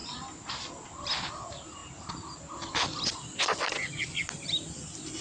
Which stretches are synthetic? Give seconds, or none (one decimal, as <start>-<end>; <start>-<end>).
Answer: none